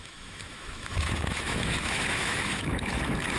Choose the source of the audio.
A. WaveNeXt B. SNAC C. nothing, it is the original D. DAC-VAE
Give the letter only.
D